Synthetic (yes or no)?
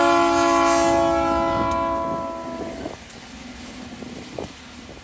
no